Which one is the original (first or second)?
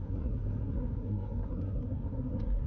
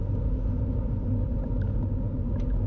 second